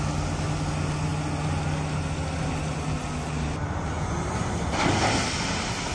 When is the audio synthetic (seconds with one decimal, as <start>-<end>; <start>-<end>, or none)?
none